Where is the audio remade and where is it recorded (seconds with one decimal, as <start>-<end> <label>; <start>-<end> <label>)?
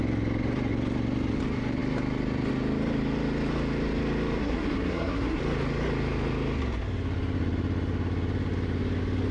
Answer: 0.0-4.4 recorded; 4.4-5.4 remade; 5.4-9.3 recorded